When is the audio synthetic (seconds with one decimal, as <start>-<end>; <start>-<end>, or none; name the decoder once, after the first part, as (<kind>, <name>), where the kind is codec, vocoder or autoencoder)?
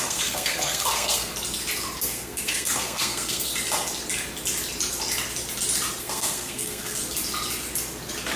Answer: 0.0-1.3 (codec, SNAC); 2.0-3.5; 6.0-7.0